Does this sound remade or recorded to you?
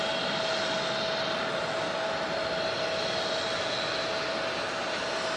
recorded